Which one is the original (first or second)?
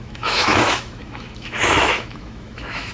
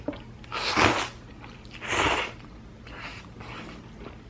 second